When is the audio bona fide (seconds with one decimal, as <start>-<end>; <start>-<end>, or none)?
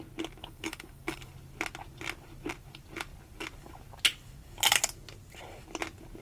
0.0-0.4; 1.3-6.2